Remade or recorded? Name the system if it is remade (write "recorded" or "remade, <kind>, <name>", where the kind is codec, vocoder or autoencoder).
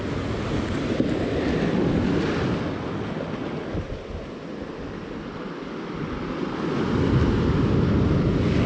recorded